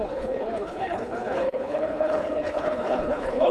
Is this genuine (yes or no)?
no